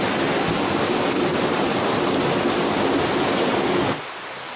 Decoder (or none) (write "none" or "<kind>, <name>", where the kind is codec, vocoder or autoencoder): none